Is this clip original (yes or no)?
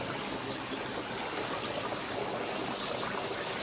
yes